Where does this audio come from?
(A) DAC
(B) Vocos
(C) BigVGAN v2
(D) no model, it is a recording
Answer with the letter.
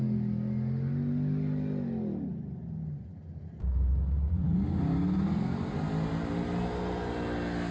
D